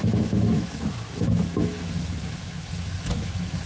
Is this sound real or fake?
fake